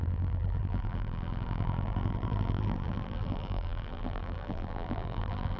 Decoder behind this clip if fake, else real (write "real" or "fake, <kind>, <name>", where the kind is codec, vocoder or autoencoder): fake, vocoder, BigVGAN v2